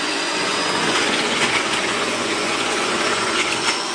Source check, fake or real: fake